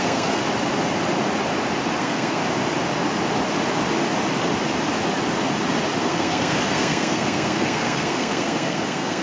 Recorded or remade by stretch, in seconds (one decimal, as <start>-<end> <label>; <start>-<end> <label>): 0.0-0.4 remade; 0.4-2.0 recorded; 2.0-2.4 remade; 2.4-6.0 recorded; 6.0-9.2 remade